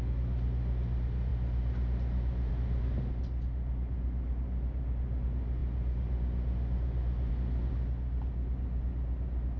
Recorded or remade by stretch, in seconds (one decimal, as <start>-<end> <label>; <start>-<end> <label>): 0.0-9.6 recorded